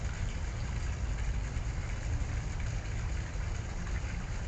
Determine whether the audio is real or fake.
real